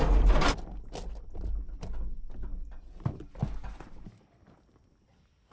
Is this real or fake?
real